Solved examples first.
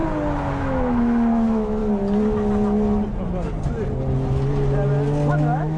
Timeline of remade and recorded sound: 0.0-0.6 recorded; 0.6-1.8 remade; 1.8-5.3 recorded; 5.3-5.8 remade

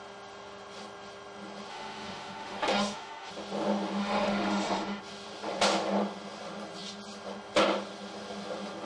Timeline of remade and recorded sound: 0.0-1.7 recorded; 1.7-3.3 remade; 3.3-4.0 recorded; 4.0-5.0 remade; 5.0-8.9 recorded

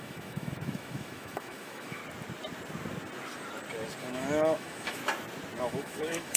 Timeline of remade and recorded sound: 0.0-2.0 remade; 2.0-4.0 recorded; 4.0-5.0 remade; 5.0-5.6 recorded; 5.6-6.4 remade

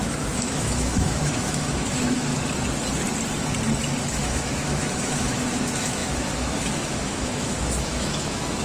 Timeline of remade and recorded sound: 0.0-2.3 remade; 2.3-4.1 recorded; 4.1-8.6 remade